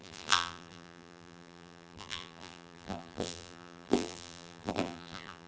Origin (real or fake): fake